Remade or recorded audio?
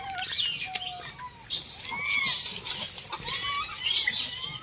recorded